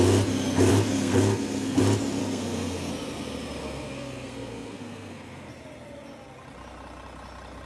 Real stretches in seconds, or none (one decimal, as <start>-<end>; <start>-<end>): 0.0-0.7; 1.8-2.2; 2.9-3.6; 5.5-7.7